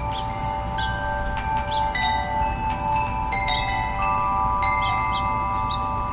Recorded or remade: recorded